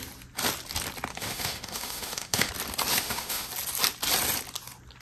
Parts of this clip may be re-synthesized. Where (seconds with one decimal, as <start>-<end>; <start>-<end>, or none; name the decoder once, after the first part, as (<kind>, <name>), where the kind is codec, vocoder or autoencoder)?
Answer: 1.1-2.5 (autoencoder, DAC-VAE); 2.9-3.5